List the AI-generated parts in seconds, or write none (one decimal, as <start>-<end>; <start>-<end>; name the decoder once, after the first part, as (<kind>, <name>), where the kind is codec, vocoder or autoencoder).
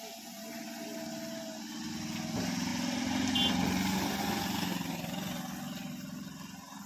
none